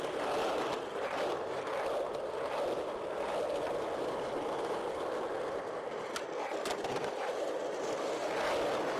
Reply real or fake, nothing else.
real